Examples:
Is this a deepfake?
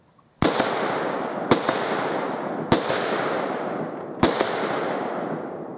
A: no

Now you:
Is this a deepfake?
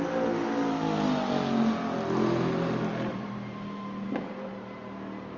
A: no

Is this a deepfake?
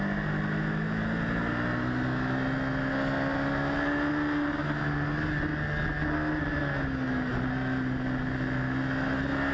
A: no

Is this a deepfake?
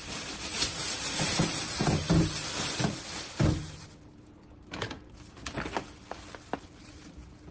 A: no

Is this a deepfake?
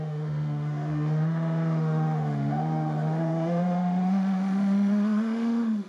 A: yes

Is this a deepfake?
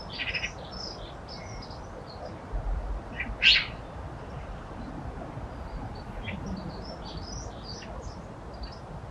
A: no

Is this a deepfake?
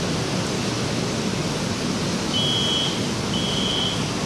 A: no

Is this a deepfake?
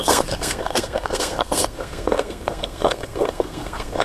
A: yes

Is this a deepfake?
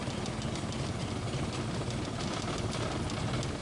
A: no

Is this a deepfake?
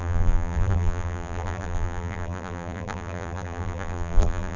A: yes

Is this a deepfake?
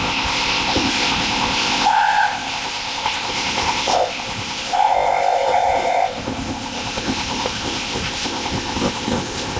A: yes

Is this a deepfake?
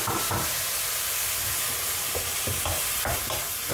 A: yes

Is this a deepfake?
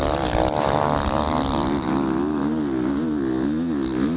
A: no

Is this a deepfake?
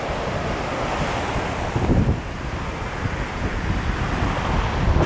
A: no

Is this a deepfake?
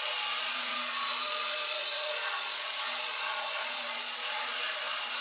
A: yes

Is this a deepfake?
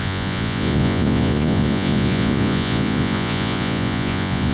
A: yes